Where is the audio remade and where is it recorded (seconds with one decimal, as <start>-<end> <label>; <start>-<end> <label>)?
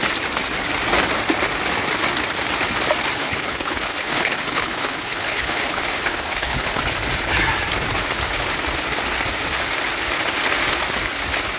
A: 0.0-3.2 recorded; 3.2-6.8 remade; 6.8-11.6 recorded